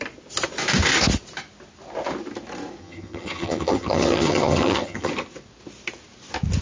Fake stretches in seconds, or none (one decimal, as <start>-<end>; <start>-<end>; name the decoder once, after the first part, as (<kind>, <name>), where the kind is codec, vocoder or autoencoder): 2.8-5.1 (vocoder, HiFi-GAN)